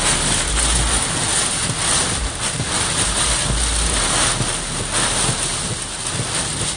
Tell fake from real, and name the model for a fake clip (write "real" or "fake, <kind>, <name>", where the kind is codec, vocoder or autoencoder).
real